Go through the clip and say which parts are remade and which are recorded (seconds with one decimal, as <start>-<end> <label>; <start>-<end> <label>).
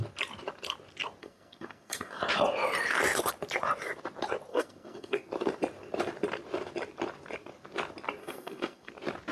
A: 0.0-1.2 recorded; 1.2-2.2 remade; 2.2-4.5 recorded; 4.5-5.3 remade; 5.3-8.2 recorded; 8.2-8.9 remade; 8.9-9.3 recorded